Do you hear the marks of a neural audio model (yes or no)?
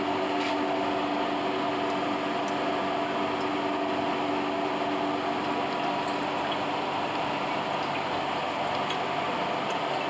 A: no